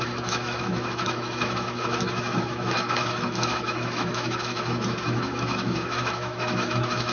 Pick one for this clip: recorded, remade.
remade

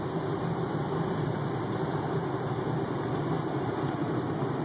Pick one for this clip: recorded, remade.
recorded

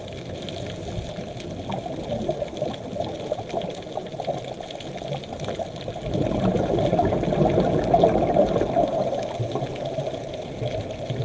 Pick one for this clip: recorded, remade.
recorded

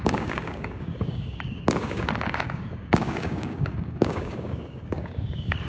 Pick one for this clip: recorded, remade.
remade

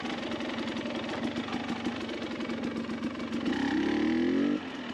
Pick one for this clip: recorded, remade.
recorded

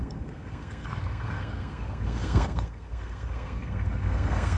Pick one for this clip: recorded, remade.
remade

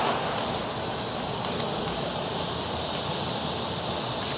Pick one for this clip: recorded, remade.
recorded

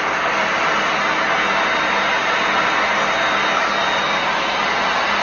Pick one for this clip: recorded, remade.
recorded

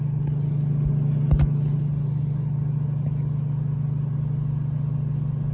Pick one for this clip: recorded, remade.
recorded